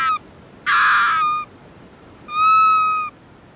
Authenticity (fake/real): real